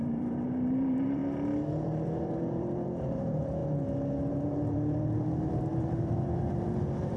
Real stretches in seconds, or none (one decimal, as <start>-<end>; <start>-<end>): 1.2-1.8; 3.6-4.3